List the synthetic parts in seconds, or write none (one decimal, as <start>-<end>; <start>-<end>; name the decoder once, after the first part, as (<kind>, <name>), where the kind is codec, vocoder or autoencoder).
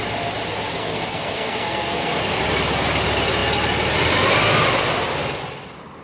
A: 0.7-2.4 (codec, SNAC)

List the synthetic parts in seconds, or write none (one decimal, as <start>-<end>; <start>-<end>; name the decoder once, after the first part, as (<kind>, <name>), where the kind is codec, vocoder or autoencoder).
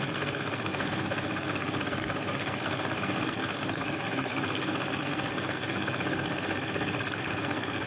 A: 0.0-7.9 (codec, SNAC)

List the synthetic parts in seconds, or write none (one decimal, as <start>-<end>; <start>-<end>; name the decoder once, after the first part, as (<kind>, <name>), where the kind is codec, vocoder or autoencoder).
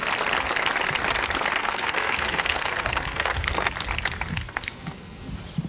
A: 1.6-3.7 (codec, SNAC); 4.3-5.3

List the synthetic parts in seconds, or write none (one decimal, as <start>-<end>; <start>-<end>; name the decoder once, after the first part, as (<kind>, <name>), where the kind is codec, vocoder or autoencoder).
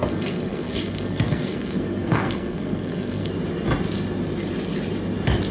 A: 0.0-3.3 (codec, SNAC)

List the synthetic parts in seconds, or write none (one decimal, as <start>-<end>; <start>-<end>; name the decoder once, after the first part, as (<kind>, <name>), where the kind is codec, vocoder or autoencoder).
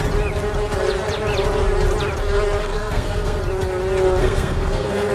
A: 2.6-3.4 (codec, SNAC); 4.2-5.1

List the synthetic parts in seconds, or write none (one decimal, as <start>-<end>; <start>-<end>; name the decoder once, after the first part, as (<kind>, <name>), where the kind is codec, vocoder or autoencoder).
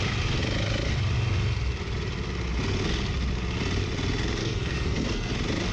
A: 4.4-5.3 (codec, SNAC)